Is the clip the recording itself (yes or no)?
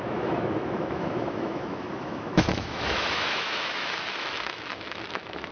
no